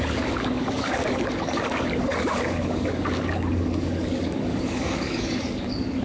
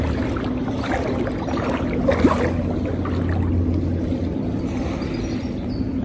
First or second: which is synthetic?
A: first